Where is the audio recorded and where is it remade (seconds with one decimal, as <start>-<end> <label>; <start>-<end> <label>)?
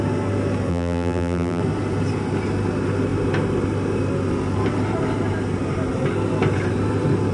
0.0-0.7 recorded; 0.7-1.6 remade; 1.6-7.3 recorded